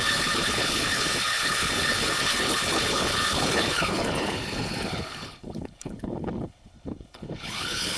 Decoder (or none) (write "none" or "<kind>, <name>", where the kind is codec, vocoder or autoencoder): codec, HILCodec